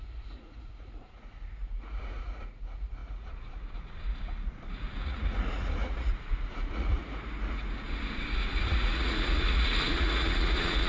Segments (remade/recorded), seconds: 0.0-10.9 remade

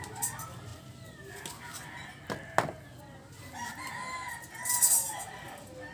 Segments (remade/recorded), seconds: 0.0-5.9 recorded

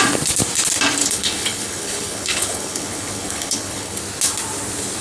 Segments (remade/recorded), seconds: 0.0-1.0 recorded; 1.0-4.0 remade; 4.0-5.0 recorded

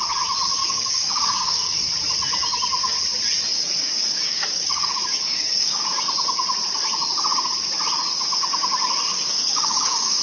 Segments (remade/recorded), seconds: 0.0-0.6 recorded; 0.6-1.8 remade; 1.8-3.5 recorded; 3.5-5.8 remade; 5.8-9.1 recorded; 9.1-10.2 remade